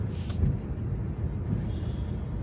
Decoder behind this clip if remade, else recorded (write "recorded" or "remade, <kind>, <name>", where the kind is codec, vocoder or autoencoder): recorded